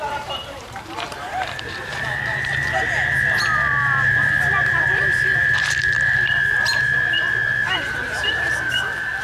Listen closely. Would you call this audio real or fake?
fake